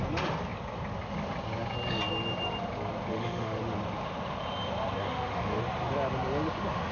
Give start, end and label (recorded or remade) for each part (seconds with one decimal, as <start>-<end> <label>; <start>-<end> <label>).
0.0-3.1 recorded; 3.1-3.6 remade; 3.6-5.0 recorded; 5.0-5.6 remade; 5.6-6.9 recorded